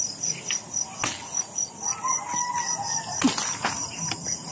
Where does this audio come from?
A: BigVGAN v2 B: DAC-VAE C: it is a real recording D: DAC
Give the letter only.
C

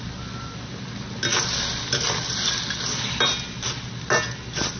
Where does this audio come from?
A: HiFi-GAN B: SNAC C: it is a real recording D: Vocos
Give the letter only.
C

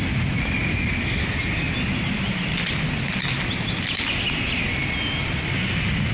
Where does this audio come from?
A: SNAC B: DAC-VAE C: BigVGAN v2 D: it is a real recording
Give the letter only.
D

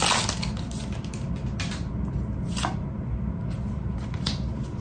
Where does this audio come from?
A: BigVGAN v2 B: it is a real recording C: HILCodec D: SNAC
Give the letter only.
B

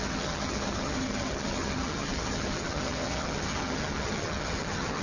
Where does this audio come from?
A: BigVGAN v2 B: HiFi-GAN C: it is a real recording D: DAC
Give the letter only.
B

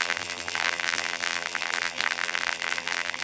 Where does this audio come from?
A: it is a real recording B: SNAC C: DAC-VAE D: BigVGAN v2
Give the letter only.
D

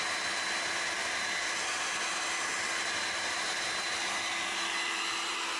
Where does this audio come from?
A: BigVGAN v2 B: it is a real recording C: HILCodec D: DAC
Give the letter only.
A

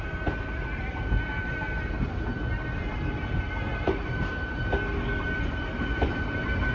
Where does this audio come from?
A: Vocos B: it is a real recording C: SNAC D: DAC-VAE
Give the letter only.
B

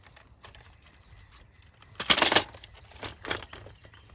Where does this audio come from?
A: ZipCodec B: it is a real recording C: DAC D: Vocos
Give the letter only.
B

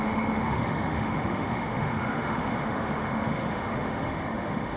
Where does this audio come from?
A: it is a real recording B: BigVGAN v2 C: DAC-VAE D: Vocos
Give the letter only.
C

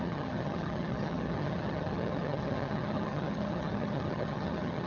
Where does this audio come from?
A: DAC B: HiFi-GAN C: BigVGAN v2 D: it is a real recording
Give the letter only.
B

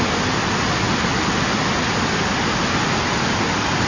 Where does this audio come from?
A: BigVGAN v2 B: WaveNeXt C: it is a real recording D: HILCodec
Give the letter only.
C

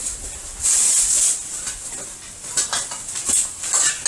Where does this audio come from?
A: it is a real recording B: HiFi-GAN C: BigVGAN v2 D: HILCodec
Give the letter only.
A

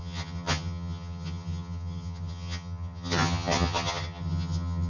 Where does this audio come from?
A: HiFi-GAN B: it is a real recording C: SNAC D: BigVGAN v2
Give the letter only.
A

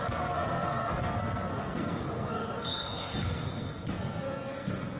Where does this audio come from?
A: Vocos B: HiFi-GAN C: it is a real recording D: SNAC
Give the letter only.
D